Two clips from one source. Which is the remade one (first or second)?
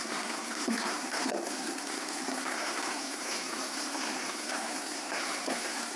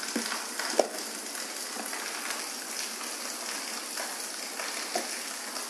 first